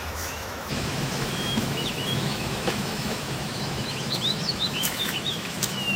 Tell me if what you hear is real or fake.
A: fake